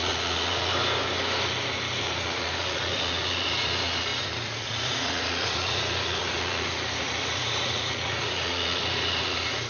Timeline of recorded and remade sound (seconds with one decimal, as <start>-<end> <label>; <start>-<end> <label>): 0.0-0.7 remade; 0.7-2.0 recorded; 2.0-9.7 remade